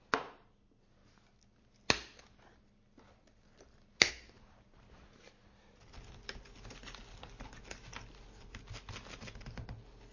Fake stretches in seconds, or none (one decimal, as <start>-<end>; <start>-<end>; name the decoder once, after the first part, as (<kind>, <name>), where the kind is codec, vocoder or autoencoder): none